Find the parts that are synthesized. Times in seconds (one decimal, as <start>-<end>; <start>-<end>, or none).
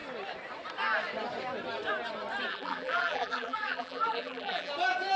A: 2.5-4.7